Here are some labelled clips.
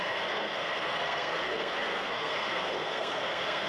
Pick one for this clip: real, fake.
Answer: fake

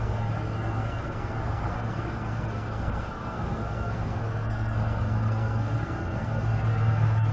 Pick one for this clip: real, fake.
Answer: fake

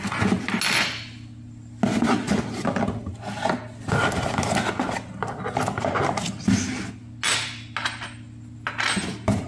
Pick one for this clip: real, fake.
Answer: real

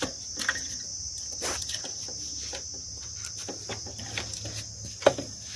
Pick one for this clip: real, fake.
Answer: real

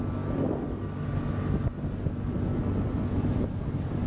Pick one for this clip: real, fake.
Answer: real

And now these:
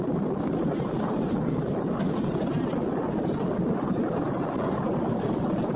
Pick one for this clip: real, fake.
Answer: real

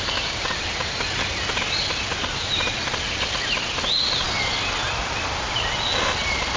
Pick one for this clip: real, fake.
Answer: real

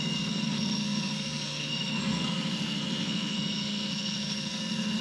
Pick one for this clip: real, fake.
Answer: fake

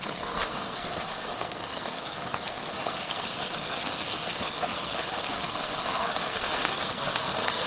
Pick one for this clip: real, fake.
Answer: fake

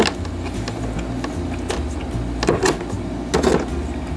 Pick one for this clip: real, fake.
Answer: real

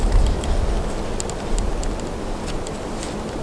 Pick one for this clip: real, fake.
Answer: real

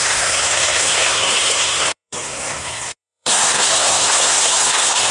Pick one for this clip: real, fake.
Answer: fake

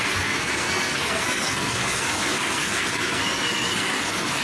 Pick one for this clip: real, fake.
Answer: fake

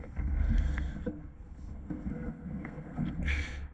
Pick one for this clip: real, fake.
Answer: fake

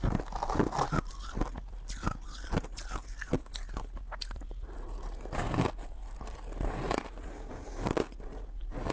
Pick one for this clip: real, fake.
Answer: real